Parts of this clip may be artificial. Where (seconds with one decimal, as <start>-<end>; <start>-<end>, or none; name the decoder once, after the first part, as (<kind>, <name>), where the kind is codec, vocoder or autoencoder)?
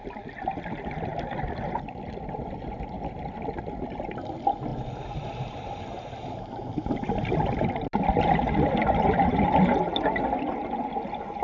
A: none